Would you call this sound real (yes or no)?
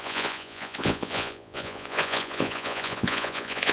no